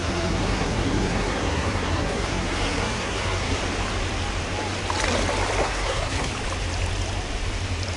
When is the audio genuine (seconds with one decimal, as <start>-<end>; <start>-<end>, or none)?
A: 3.6-5.6; 6.3-8.0